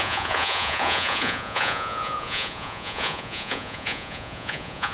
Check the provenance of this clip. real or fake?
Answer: fake